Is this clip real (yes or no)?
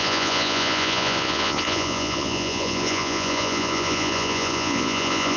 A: no